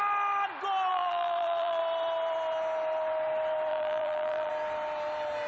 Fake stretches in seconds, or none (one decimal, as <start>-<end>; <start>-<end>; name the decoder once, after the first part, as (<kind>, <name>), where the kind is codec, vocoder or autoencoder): 0.9-1.8 (vocoder, BigVGAN v2); 3.7-4.5